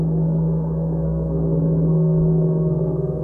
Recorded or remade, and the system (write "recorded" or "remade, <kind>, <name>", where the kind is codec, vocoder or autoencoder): remade, codec, SNAC